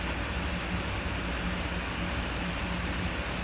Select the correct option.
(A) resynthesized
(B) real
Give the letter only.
B